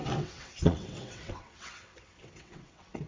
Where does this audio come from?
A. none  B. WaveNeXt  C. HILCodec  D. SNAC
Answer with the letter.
B